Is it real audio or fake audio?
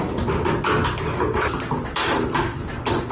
real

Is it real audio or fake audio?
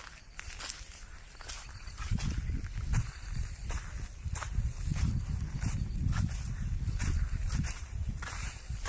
real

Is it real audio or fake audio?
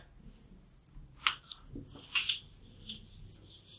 real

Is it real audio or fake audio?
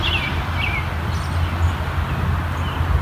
real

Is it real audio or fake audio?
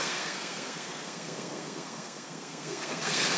fake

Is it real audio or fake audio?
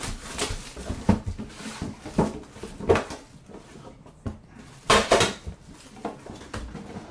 real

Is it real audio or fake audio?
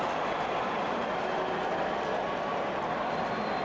real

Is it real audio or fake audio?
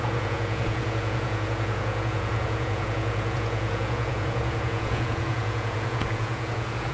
fake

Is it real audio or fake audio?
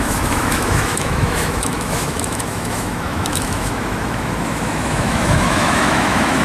fake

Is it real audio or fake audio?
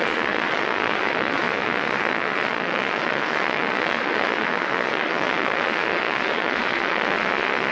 fake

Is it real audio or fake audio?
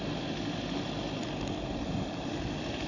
real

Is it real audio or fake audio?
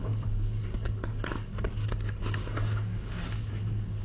fake